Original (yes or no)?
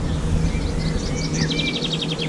yes